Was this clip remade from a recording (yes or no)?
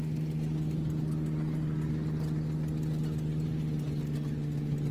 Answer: no